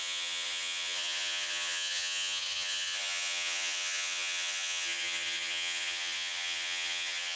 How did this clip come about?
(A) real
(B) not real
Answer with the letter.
B